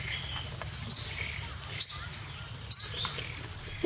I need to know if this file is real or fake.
real